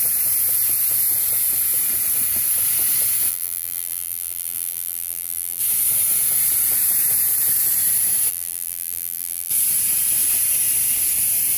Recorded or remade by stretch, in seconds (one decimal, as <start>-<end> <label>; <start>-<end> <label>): 0.0-3.3 recorded; 3.3-5.6 remade; 5.6-8.3 recorded; 8.3-9.5 remade; 9.5-11.6 recorded